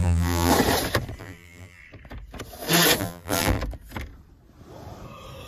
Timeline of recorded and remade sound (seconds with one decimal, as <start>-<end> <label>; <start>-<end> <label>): 0.0-0.5 remade; 0.5-1.2 recorded; 1.2-1.8 remade; 1.8-3.0 recorded; 3.0-3.6 remade; 3.6-5.5 recorded